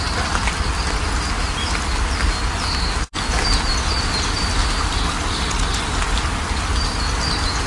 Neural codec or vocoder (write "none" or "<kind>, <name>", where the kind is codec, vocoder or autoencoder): none